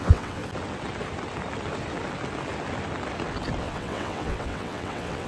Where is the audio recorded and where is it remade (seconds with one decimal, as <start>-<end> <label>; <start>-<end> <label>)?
0.0-0.4 remade; 0.4-3.6 recorded; 3.6-5.3 remade